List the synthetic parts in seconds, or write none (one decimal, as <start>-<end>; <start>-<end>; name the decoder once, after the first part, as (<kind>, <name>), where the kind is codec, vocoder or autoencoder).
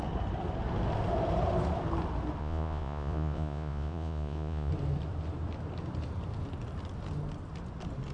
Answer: 2.4-4.7 (vocoder, Vocos)